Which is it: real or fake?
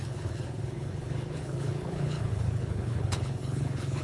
fake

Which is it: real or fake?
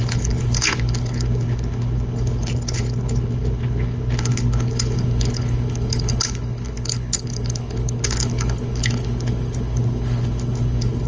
fake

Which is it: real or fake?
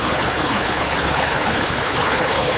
fake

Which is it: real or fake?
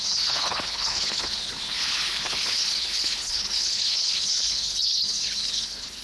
fake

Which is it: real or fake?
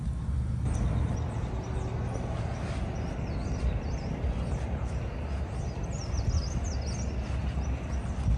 real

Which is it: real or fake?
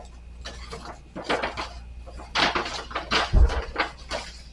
real